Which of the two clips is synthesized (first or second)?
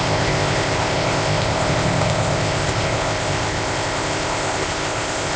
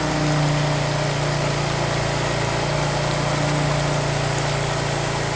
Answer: first